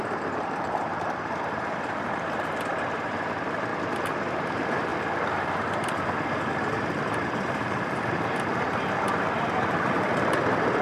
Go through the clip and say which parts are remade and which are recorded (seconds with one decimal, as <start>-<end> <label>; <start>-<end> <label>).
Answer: 0.0-3.7 remade; 3.7-4.3 recorded; 4.3-4.9 remade; 4.9-6.5 recorded; 6.5-10.8 remade